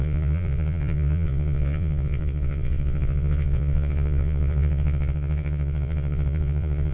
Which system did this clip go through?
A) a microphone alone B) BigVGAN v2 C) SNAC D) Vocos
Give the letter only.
D